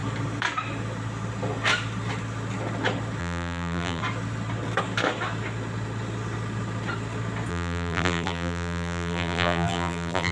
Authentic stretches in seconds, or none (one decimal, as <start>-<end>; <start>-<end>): 0.0-3.2; 4.0-7.5